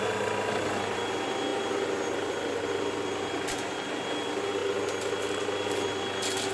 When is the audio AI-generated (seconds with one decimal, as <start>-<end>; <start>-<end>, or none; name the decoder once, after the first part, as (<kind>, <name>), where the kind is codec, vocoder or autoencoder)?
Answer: none